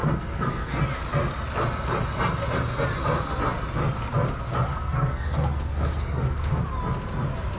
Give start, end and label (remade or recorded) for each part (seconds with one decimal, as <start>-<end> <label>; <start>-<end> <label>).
0.0-0.8 remade; 0.8-4.7 recorded; 4.7-6.6 remade; 6.6-7.6 recorded